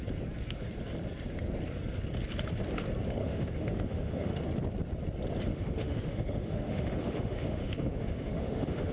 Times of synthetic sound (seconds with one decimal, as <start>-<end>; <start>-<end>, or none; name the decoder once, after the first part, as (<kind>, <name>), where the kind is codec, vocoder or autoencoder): 3.2-4.4 (autoencoder, DAC-VAE); 5.5-8.9